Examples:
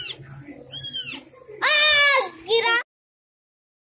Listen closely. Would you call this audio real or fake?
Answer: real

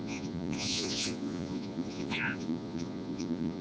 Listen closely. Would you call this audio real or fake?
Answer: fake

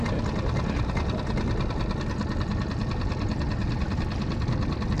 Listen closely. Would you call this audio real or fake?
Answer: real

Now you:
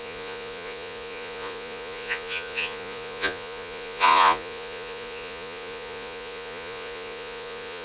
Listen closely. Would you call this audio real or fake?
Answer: fake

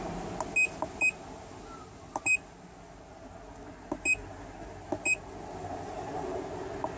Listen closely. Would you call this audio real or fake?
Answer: real